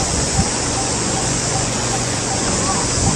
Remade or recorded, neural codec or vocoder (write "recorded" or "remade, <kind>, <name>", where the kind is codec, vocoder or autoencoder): remade, vocoder, Vocos